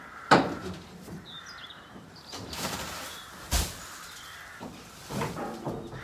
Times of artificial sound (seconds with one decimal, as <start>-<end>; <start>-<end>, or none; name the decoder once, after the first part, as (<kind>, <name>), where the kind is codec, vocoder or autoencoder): 1.6-3.8 (vocoder, BigVGAN v2)